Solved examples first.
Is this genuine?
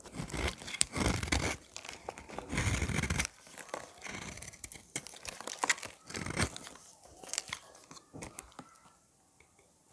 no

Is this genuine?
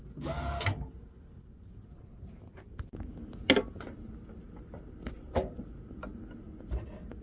yes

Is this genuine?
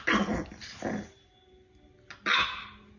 yes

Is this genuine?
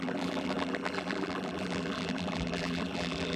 no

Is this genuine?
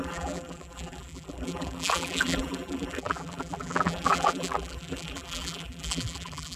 no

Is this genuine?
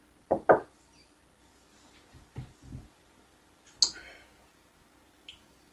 yes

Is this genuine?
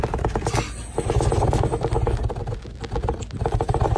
yes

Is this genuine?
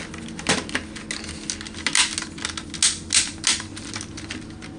yes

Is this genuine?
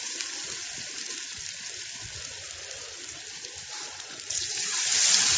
no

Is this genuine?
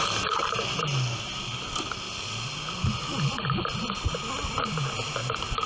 yes